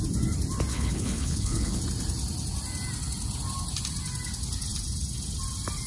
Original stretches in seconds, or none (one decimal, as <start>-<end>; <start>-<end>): 0.0-0.7; 1.8-5.9